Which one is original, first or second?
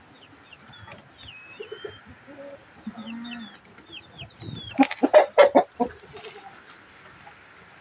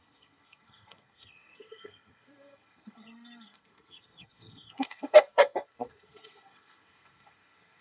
first